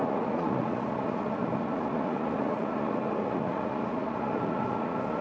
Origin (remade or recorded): remade